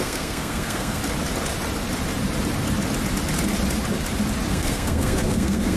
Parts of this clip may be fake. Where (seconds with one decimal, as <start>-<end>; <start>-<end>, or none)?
0.0-1.0; 4.5-5.8